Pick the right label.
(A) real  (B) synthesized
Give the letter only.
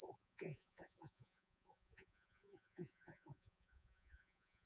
B